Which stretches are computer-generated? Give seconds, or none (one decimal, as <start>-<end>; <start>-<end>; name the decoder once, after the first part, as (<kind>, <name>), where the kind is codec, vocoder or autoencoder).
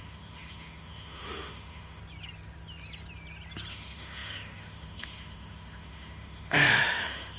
0.0-2.0 (autoencoder, DAC-VAE); 3.7-7.4